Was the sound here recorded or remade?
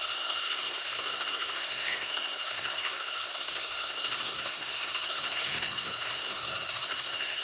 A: remade